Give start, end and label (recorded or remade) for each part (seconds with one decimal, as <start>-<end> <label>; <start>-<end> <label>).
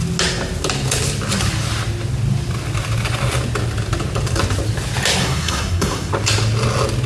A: 0.0-5.2 recorded; 5.2-6.1 remade; 6.1-7.1 recorded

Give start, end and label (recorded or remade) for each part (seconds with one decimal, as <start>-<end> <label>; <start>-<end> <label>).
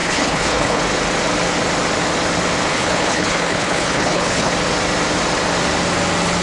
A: 0.0-0.8 remade; 0.8-2.7 recorded; 2.7-4.5 remade; 4.5-6.4 recorded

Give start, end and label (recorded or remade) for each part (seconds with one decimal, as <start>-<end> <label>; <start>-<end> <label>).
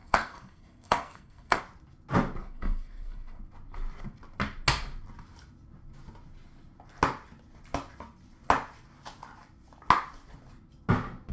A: 0.0-1.6 remade; 1.6-2.4 recorded; 2.4-3.4 remade; 3.4-11.3 recorded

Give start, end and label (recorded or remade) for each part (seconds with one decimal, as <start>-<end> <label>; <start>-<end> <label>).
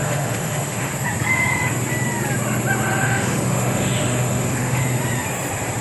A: 0.0-0.9 remade; 0.9-3.0 recorded; 3.0-4.8 remade; 4.8-5.8 recorded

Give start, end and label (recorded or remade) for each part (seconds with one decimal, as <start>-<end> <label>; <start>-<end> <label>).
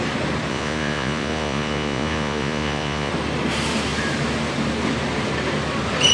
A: 0.0-0.5 recorded; 0.5-3.1 remade; 3.1-6.1 recorded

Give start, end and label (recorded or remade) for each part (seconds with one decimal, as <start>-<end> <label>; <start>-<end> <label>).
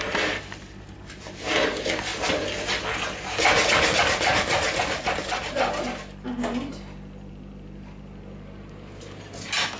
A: 0.0-9.8 recorded